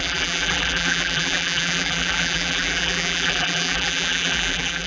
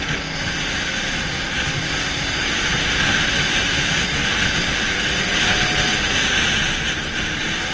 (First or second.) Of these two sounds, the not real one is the first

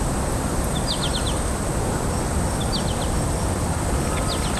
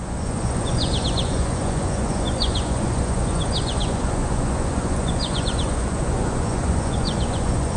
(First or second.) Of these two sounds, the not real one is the second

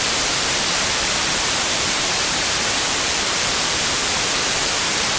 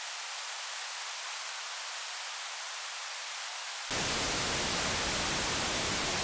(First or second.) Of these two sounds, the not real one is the first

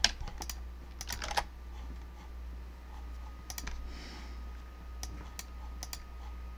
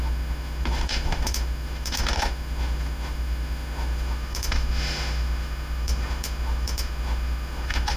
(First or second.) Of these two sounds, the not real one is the second